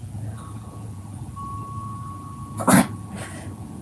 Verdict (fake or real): real